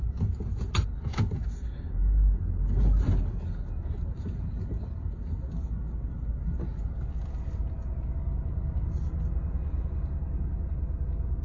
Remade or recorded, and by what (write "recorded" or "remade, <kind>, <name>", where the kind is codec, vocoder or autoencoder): recorded